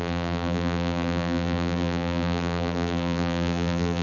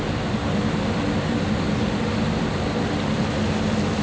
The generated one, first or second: first